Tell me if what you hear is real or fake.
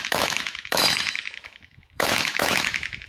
fake